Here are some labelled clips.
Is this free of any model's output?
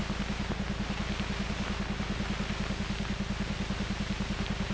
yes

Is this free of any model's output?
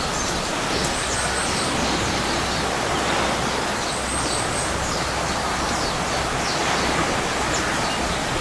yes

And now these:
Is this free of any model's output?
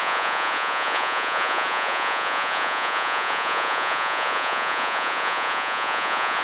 no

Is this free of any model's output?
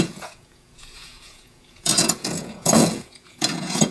no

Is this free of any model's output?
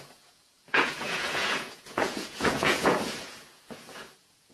no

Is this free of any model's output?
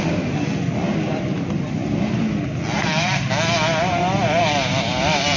yes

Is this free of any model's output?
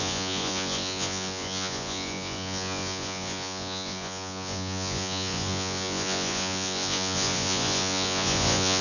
no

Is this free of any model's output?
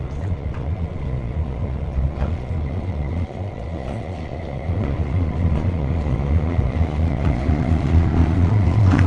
no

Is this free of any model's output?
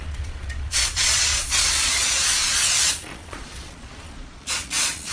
no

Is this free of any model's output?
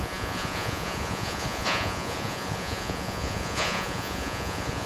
no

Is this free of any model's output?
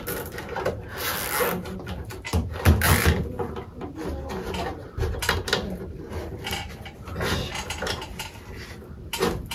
yes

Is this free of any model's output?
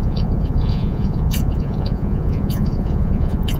no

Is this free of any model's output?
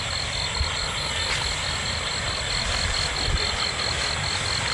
yes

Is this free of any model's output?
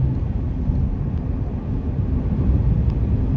yes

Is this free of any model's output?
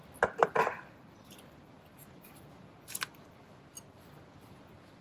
yes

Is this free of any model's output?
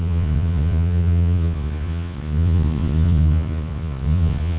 no